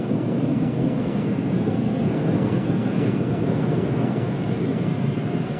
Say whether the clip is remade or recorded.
remade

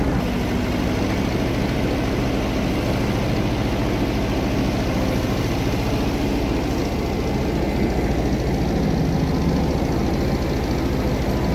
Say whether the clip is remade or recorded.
recorded